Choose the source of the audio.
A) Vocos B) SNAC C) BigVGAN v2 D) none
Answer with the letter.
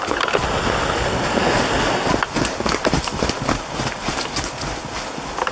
D